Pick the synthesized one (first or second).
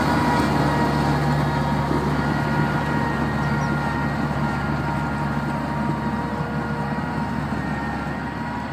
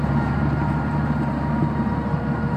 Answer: second